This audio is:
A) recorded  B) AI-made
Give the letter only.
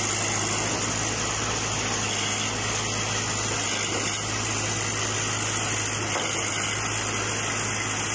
A